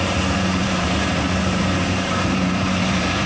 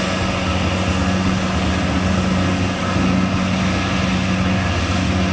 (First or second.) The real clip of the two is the second